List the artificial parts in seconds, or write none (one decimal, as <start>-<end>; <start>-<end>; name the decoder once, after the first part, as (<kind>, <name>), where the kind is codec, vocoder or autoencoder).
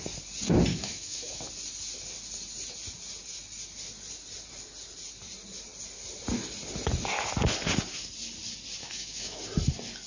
0.7-1.5 (autoencoder, DAC-VAE); 8.8-9.4